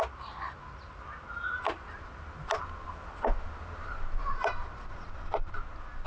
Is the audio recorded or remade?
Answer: recorded